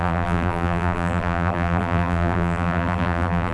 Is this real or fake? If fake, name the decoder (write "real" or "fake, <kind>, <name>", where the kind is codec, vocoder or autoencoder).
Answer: fake, vocoder, BigVGAN v2